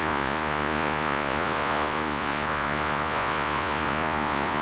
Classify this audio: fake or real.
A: fake